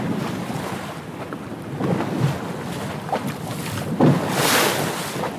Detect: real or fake real